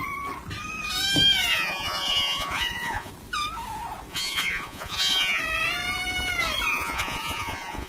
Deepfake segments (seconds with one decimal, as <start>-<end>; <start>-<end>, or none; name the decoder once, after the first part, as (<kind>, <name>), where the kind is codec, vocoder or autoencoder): 1.5-3.1 (vocoder, Vocos); 4.1-5.4; 6.7-7.9